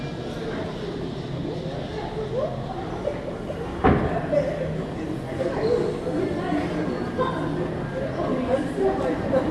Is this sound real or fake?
real